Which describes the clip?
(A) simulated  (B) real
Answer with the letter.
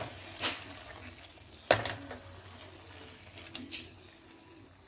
B